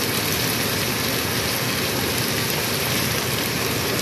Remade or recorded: recorded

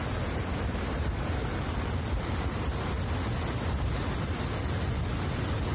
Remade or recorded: recorded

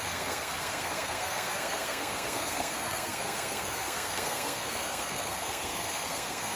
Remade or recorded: remade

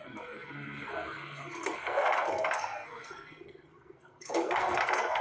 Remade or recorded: remade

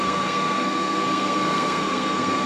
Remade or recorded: remade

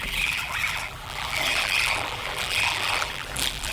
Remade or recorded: remade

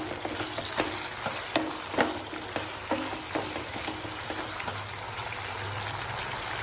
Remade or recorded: recorded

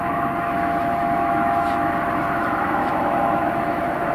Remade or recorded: remade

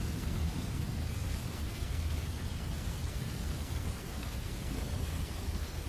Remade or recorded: remade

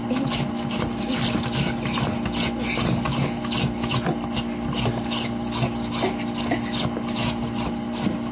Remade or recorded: recorded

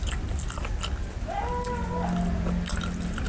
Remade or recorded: recorded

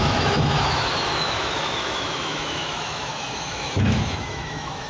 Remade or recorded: remade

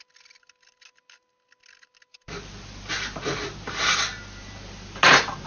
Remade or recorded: recorded